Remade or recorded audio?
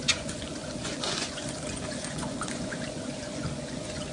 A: remade